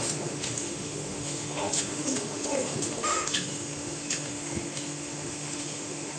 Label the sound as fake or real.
fake